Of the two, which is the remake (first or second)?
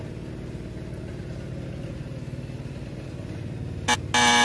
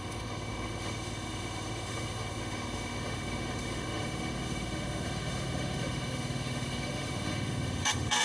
second